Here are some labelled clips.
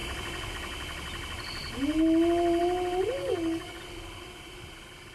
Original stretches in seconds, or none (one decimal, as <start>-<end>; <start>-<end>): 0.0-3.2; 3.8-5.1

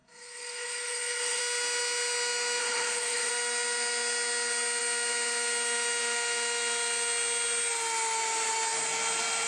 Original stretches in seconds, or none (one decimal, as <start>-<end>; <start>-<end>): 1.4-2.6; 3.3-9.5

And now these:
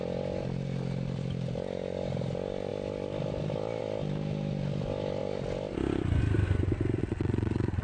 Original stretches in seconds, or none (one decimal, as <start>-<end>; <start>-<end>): 0.0-7.0

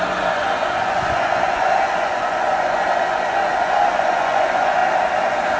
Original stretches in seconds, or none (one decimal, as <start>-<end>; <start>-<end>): 4.8-5.6